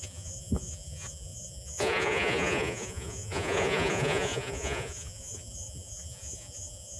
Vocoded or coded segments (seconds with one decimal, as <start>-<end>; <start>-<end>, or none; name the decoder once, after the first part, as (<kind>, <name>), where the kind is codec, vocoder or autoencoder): 0.0-7.0 (vocoder, Vocos)